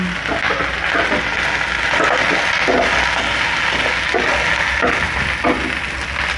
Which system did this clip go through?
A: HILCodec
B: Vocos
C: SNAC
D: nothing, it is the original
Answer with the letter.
D